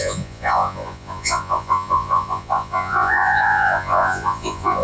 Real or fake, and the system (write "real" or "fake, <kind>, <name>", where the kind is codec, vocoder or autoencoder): fake, vocoder, Vocos